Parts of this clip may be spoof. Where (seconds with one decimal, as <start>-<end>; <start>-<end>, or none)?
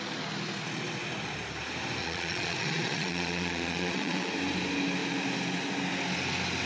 2.0-4.3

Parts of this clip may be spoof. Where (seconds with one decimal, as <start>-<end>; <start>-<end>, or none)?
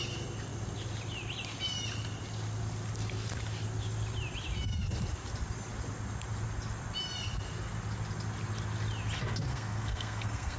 9.5-10.6